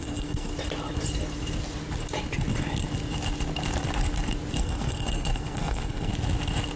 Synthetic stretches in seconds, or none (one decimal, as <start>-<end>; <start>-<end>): 0.0-0.5; 4.6-6.1